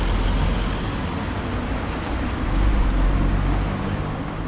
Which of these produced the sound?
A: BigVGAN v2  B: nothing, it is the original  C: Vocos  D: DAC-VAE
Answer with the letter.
B